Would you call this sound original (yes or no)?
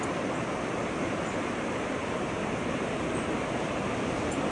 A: no